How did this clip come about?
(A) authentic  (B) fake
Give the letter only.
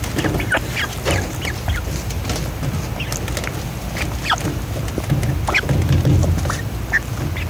A